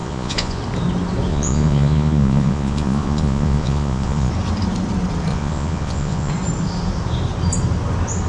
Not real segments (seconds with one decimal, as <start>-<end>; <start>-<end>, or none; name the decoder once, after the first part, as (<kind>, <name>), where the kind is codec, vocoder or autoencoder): 0.0-0.6 (vocoder, Vocos); 1.3-4.3; 5.3-6.3